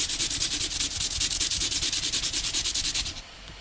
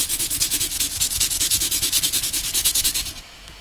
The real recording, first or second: first